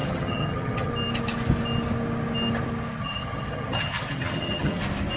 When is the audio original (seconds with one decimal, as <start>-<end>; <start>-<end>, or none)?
0.9-3.0; 4.8-5.2